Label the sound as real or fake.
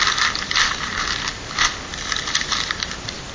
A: real